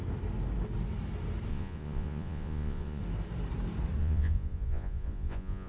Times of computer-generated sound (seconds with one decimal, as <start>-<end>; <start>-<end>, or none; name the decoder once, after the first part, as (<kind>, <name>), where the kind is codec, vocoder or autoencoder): 1.5-3.0 (vocoder, Vocos); 4.0-5.7